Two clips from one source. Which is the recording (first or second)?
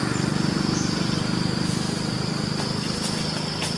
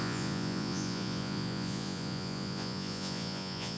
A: first